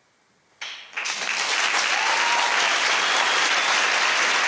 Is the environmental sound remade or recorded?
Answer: recorded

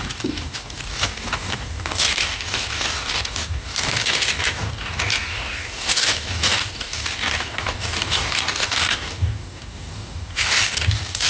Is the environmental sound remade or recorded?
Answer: remade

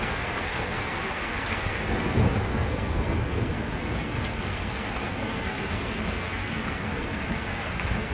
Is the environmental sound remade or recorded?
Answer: remade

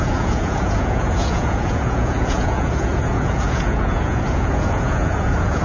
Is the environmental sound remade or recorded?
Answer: remade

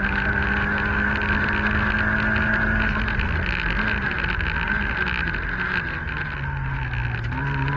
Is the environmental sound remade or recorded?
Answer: recorded